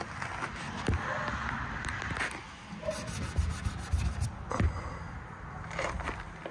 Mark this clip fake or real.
real